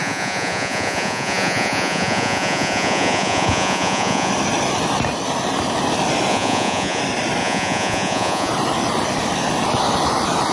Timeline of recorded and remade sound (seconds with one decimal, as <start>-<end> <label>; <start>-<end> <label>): 0.0-4.3 remade; 4.3-6.3 recorded; 6.3-7.0 remade; 7.0-7.4 recorded; 7.4-8.5 remade; 8.5-10.5 recorded